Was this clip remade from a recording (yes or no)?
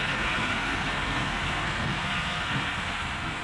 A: yes